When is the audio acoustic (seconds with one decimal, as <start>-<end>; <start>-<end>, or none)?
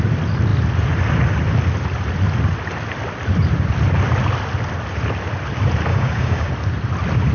0.0-5.9; 6.5-7.3